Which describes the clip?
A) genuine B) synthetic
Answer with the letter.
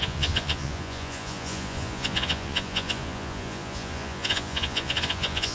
B